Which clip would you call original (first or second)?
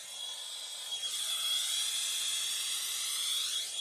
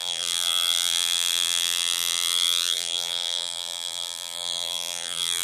first